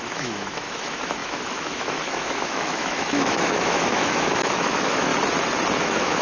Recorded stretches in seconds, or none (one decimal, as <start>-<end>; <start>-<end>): 5.1-5.8